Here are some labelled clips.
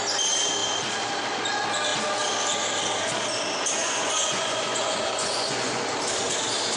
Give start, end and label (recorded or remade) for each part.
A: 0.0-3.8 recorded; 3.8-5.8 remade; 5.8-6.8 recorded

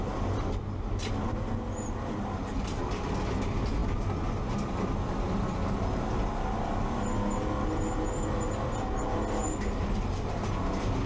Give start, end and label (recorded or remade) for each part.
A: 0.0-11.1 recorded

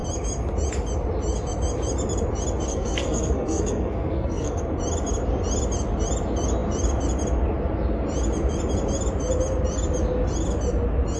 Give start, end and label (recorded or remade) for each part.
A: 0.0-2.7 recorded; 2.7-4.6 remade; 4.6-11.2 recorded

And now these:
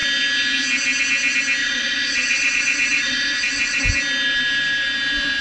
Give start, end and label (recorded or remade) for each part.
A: 0.0-1.6 recorded; 1.6-3.8 remade; 3.8-5.4 recorded

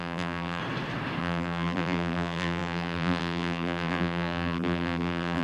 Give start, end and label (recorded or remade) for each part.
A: 0.0-0.6 remade; 0.6-1.2 recorded; 1.2-5.4 remade

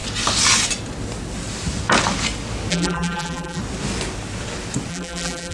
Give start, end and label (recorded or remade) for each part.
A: 0.0-2.7 recorded; 2.7-3.6 remade; 3.6-4.9 recorded; 4.9-5.5 remade

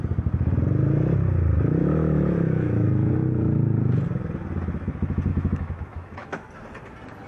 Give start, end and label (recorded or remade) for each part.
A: 0.0-1.8 recorded; 1.8-3.1 remade; 3.1-5.3 recorded; 5.3-6.5 remade; 6.5-7.3 recorded